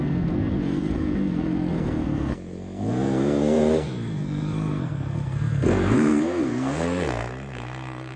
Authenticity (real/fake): fake